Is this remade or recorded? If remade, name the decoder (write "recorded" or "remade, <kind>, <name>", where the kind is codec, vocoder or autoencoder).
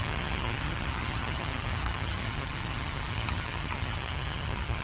remade, vocoder, HiFi-GAN